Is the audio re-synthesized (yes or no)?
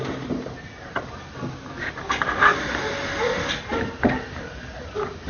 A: no